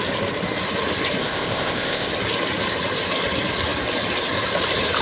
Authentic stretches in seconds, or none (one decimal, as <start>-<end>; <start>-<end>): 0.0-1.2; 2.1-5.0